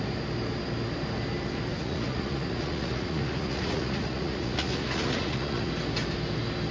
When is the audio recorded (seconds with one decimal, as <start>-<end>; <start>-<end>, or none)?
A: 0.0-1.7; 5.7-6.7